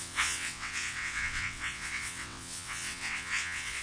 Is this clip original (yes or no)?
no